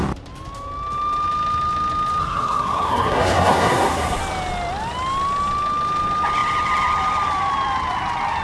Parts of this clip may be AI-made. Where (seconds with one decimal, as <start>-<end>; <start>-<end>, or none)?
2.2-4.2